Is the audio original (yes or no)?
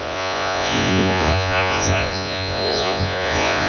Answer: no